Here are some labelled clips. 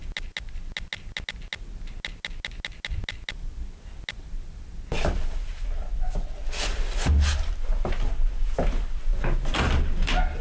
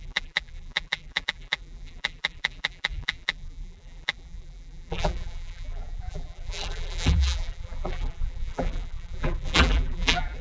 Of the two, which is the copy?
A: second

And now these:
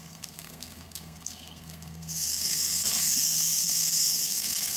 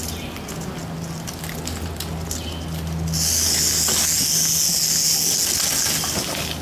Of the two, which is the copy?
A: first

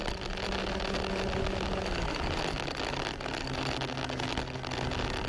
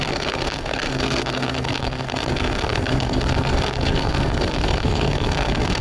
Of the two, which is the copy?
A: second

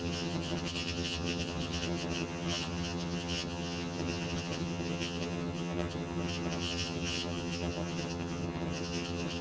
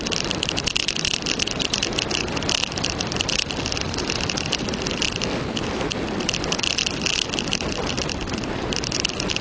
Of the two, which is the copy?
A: first